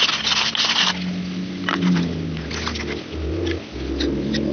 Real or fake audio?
real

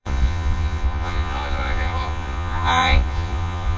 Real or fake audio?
fake